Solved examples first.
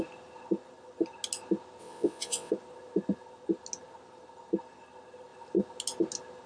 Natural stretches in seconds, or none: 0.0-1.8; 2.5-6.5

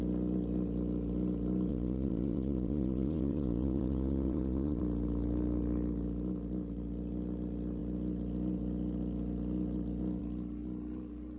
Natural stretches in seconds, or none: 0.0-1.7; 4.8-11.4

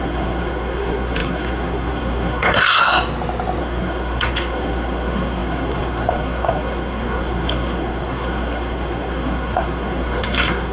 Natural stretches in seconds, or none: 2.9-3.6

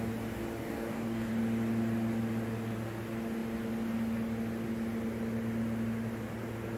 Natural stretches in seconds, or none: 0.0-0.6; 1.3-6.8

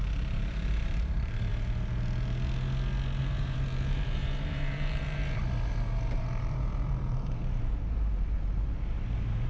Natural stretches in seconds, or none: 1.5-3.2; 5.4-6.1

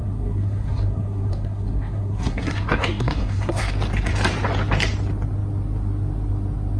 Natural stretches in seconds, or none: 3.7-6.8